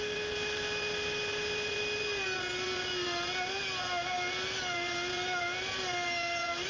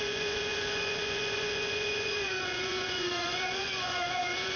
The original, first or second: first